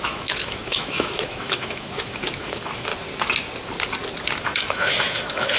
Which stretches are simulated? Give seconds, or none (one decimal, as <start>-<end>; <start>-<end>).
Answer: 0.0-2.9; 4.4-5.6